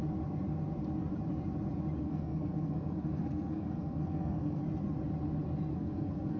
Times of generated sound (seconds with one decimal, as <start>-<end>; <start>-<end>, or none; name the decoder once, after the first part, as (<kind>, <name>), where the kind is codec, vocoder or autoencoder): 2.0-4.6 (codec, SNAC); 5.7-6.4